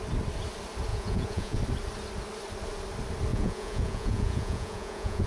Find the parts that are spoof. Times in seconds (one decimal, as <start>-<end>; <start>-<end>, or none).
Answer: 0.9-1.6; 3.3-5.3